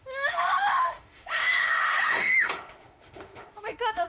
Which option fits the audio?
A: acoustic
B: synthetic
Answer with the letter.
B